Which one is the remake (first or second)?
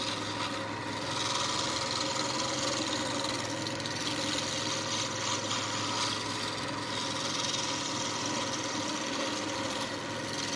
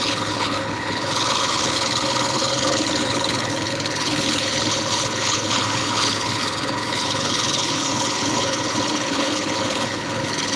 second